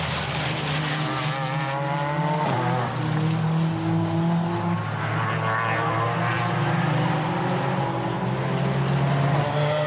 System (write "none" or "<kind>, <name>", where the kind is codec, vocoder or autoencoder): none